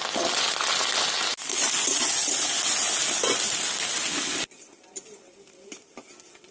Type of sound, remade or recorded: recorded